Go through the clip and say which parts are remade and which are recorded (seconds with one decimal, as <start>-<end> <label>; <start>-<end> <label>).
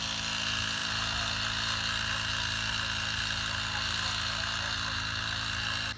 0.0-6.0 recorded